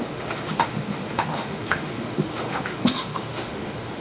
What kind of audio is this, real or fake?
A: fake